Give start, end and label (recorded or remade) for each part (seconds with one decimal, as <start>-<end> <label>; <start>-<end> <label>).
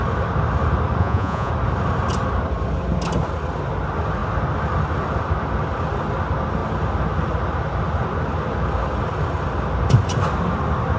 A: 0.0-1.0 recorded; 1.0-1.5 remade; 1.5-11.0 recorded